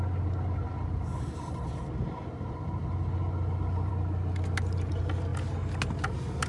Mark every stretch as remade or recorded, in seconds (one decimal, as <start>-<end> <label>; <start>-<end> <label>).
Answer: 0.0-6.5 recorded